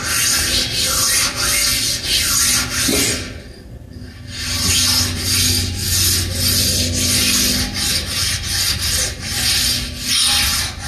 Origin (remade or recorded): recorded